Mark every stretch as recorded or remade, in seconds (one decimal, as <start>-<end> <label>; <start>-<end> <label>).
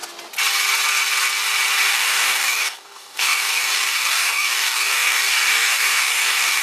0.0-1.8 recorded; 1.8-6.6 remade